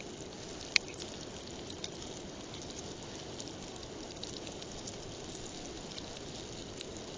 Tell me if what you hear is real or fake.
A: real